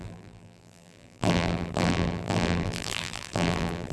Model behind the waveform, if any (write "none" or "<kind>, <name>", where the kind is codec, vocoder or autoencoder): vocoder, BigVGAN v2